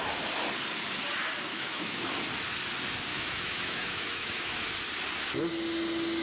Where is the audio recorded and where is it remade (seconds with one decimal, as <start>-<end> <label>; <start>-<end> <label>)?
0.0-1.5 recorded; 1.5-2.1 remade; 2.1-3.1 recorded; 3.1-4.7 remade; 4.7-6.2 recorded